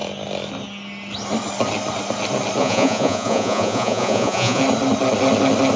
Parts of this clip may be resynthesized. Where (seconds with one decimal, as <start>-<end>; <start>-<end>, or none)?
2.6-4.6